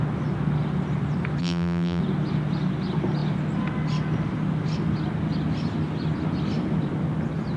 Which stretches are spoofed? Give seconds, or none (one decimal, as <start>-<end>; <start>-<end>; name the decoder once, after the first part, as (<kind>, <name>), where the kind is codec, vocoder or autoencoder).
1.4-2.0 (vocoder, BigVGAN v2)

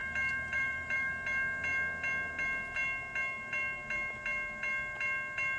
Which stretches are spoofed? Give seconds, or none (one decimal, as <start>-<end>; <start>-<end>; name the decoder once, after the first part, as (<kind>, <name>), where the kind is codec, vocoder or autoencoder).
0.0-1.1 (vocoder, BigVGAN v2)